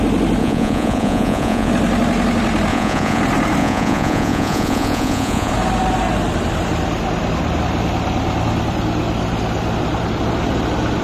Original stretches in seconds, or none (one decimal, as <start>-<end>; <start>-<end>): 0.0-0.4; 1.7-2.7; 3.2-3.6; 5.5-11.0